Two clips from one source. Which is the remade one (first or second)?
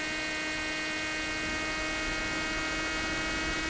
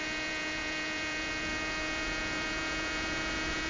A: second